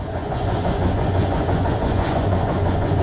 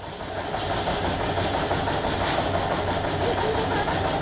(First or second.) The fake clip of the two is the first